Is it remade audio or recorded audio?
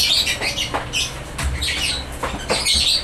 recorded